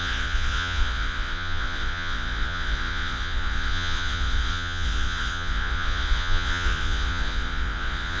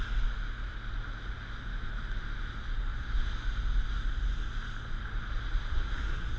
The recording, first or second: second